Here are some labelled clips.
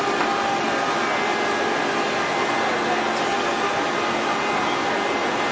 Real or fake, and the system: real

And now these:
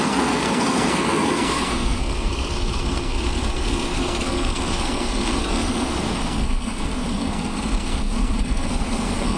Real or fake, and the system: fake, codec, SNAC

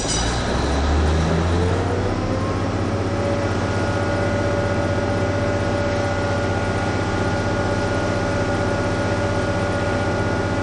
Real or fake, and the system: real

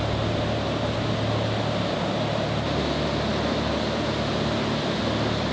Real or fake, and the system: real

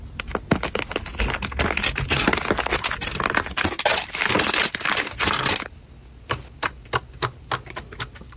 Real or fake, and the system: real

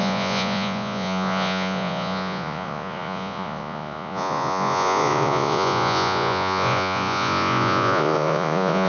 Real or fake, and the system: fake, vocoder, Vocos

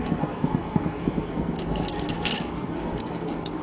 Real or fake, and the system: fake, codec, SNAC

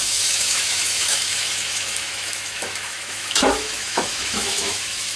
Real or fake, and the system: fake, autoencoder, DAC-VAE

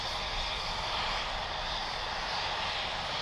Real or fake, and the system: real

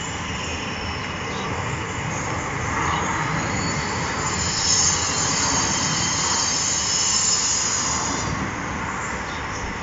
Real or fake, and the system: real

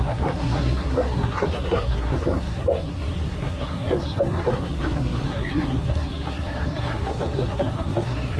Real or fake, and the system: fake, codec, SNAC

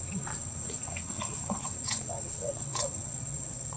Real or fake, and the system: fake, vocoder, WaveNeXt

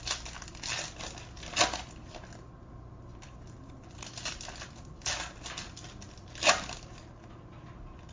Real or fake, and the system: real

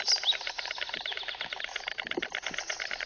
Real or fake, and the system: real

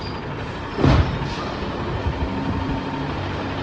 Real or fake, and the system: real